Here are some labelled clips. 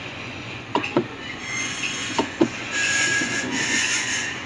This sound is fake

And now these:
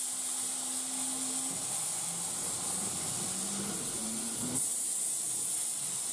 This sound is real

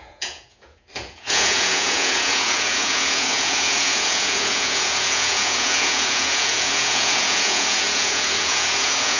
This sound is fake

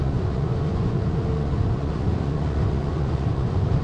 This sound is fake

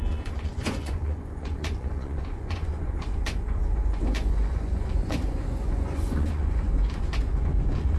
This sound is fake